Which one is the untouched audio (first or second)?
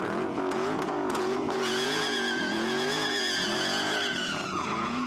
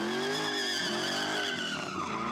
second